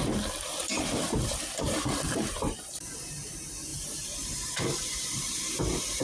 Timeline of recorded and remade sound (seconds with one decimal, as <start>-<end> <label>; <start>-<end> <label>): 0.0-0.6 recorded; 0.6-3.1 remade; 3.1-3.7 recorded; 3.7-5.6 remade; 5.6-6.0 recorded